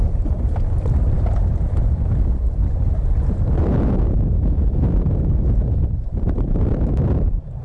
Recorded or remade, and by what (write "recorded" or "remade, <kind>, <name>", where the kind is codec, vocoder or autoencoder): remade, vocoder, BigVGAN v2